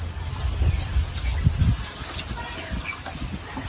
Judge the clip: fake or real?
real